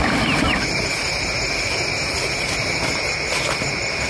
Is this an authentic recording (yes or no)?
no